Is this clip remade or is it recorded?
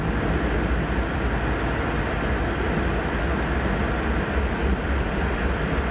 recorded